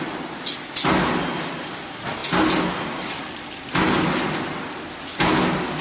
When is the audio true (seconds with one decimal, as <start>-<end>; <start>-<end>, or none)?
0.0-5.8